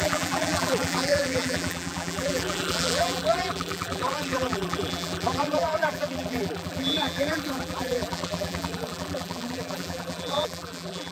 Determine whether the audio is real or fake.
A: fake